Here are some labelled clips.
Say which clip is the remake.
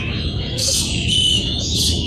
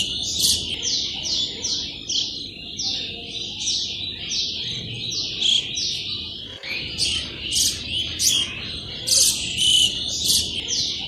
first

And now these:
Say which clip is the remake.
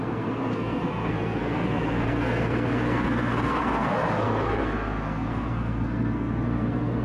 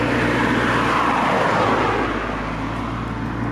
first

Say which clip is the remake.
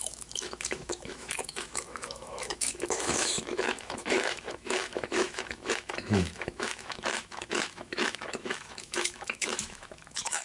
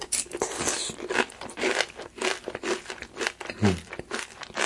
first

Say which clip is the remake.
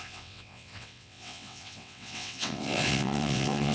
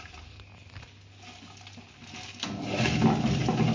first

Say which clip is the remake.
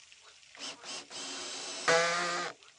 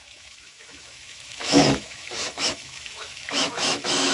second